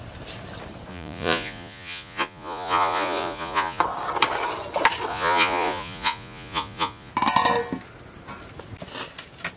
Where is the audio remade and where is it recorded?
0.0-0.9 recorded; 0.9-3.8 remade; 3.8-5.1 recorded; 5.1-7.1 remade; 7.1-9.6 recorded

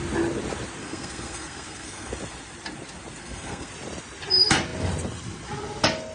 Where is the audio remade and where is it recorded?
0.0-0.8 recorded; 0.8-2.1 remade; 2.1-3.2 recorded; 3.2-3.7 remade; 3.7-6.1 recorded

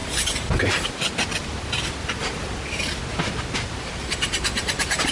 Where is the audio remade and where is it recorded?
0.0-0.9 remade; 0.9-4.0 recorded; 4.0-5.1 remade

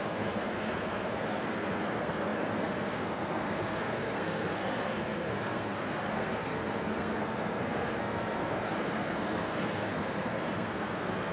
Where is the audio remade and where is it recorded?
0.0-11.3 remade

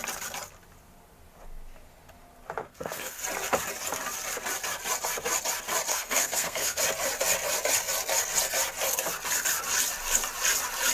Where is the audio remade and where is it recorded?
0.0-2.6 recorded; 2.6-3.2 remade; 3.2-5.9 recorded; 5.9-6.8 remade; 6.8-10.9 recorded

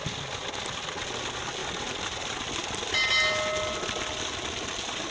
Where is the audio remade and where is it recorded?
0.0-5.1 recorded

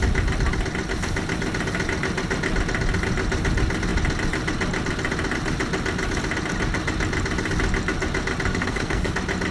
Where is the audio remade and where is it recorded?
0.0-8.5 recorded; 8.5-9.1 remade; 9.1-9.5 recorded

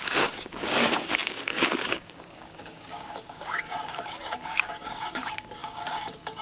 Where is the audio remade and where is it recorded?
0.0-6.4 remade